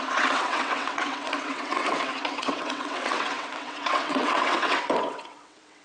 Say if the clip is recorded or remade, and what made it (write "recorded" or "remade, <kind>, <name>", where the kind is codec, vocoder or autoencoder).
remade, vocoder, WaveNeXt